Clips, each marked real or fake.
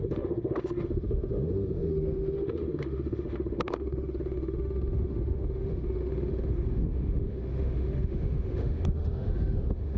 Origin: fake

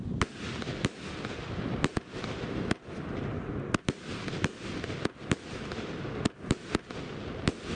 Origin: real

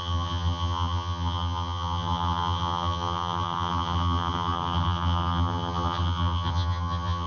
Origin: fake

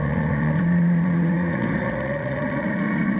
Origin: fake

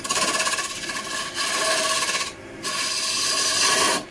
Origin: real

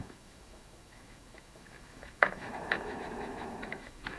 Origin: fake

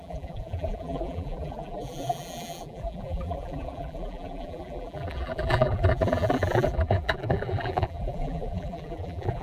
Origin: fake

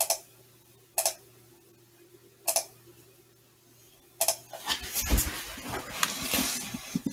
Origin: real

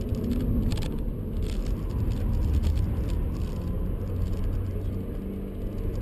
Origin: real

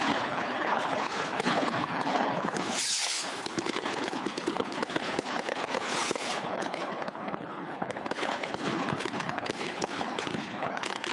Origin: fake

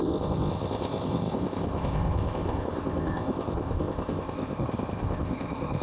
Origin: fake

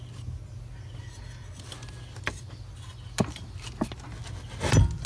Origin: real